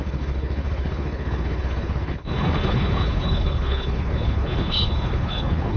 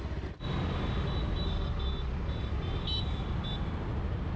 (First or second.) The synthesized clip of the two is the first